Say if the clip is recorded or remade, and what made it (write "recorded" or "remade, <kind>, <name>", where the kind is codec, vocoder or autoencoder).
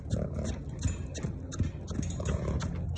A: recorded